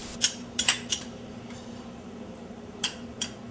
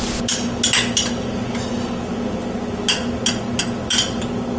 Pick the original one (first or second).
second